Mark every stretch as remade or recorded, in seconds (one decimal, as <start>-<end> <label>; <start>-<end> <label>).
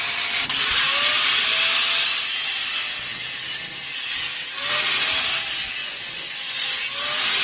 0.0-5.8 recorded; 5.8-6.8 remade; 6.8-7.4 recorded